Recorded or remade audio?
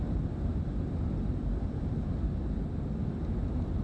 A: recorded